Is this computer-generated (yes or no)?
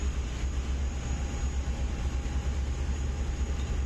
no